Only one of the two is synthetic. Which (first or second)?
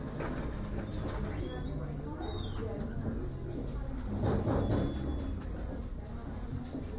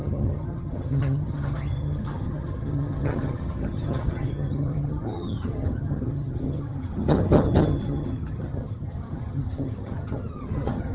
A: second